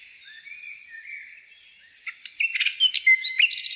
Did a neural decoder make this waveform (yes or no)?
no